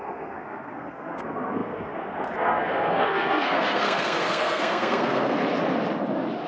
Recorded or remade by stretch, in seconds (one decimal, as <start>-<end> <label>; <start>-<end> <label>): 0.0-5.4 remade; 5.4-6.5 recorded